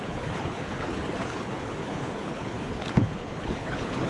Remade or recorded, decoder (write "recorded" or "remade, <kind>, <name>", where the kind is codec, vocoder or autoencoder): remade, codec, HILCodec